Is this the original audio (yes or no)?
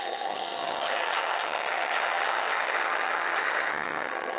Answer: no